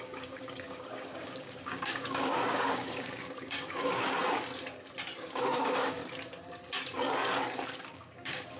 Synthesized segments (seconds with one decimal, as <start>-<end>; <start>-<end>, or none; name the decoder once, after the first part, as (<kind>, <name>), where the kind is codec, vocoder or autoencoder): 0.0-4.2 (codec, DAC); 5.2-6.0; 7.9-8.6